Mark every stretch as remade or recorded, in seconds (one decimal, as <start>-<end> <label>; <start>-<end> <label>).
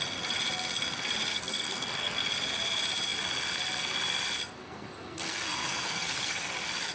0.0-1.3 recorded; 1.3-2.2 remade; 2.2-4.6 recorded; 4.6-6.5 remade; 6.5-6.9 recorded